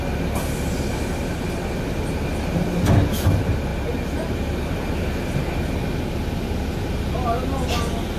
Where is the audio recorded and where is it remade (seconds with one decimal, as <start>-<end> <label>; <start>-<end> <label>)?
0.0-3.7 recorded; 3.7-4.8 remade; 4.8-8.2 recorded